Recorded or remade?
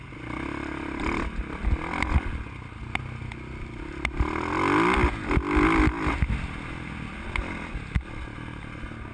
recorded